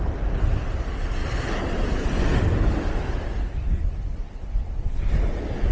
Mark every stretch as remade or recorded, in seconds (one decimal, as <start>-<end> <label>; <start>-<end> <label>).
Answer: 0.0-5.7 recorded

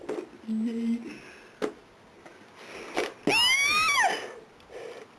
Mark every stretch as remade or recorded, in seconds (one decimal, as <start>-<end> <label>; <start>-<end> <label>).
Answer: 0.0-5.2 recorded

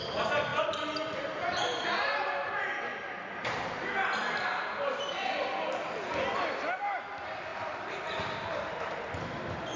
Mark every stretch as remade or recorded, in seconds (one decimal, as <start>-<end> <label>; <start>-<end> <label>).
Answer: 0.0-0.5 recorded; 0.5-3.1 remade; 3.1-9.8 recorded

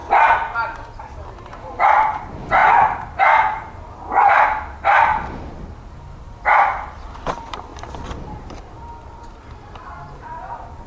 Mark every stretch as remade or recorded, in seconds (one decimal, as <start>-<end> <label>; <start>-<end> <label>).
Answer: 0.0-1.0 recorded; 1.0-7.7 remade; 7.7-8.4 recorded; 8.4-10.9 remade

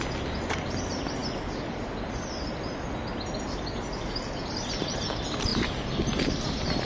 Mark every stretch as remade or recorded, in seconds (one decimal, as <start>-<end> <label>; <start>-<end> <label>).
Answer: 0.0-1.2 recorded; 1.2-2.5 remade; 2.5-6.8 recorded

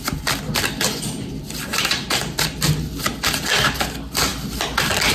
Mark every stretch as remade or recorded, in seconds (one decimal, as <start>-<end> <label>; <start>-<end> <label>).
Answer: 0.0-1.7 recorded; 1.7-2.4 remade; 2.4-5.1 recorded

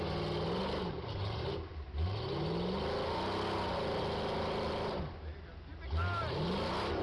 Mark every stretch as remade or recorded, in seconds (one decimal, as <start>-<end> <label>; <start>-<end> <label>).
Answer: 0.0-7.0 recorded

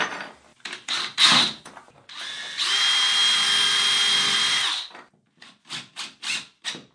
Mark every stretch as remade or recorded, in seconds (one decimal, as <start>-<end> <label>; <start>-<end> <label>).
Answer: 0.0-0.5 remade; 0.5-1.9 recorded; 1.9-6.9 remade